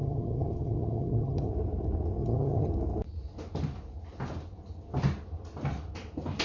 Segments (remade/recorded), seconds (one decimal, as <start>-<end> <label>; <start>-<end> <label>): 0.0-1.5 remade; 1.5-2.2 recorded; 2.2-2.7 remade; 2.7-6.4 recorded